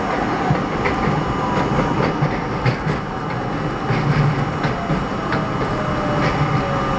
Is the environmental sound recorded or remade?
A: recorded